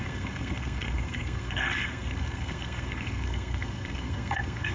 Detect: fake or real fake